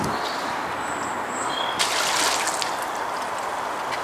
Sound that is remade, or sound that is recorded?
recorded